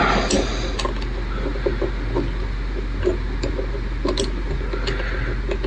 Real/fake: real